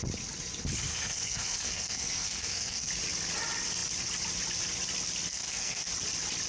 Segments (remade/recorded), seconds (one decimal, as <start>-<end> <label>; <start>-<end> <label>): 0.0-0.9 recorded; 0.9-2.9 remade; 2.9-5.3 recorded; 5.3-5.9 remade; 5.9-6.5 recorded